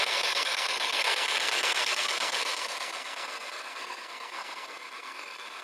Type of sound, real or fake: fake